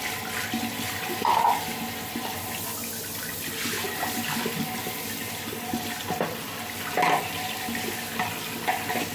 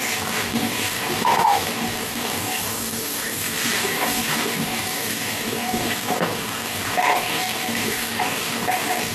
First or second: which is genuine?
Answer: first